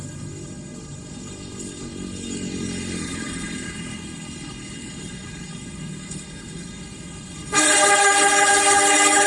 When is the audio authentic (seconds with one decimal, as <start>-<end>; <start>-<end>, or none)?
none